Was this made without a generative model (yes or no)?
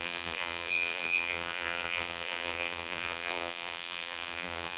no